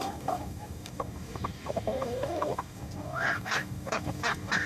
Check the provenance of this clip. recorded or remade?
remade